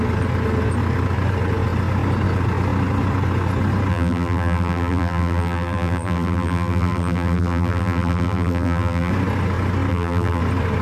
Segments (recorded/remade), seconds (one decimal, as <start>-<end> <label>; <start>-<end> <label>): 0.0-3.9 recorded; 3.9-9.1 remade; 9.1-9.9 recorded; 9.9-10.4 remade; 10.4-10.8 recorded